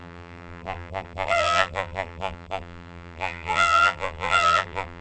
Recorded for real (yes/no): no